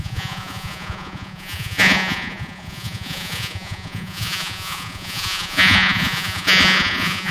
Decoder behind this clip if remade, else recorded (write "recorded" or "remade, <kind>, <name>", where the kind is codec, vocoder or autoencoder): remade, vocoder, Vocos